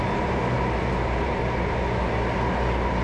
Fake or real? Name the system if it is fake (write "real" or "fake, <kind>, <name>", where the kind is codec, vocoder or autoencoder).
real